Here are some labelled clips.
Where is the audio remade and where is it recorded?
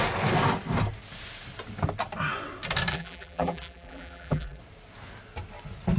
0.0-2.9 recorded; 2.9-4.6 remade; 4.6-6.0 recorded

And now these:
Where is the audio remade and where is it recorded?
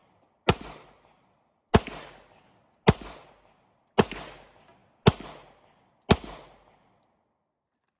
0.0-8.0 recorded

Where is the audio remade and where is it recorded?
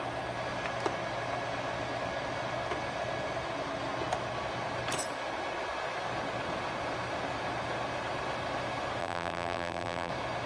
0.0-9.0 recorded; 9.0-10.1 remade; 10.1-10.5 recorded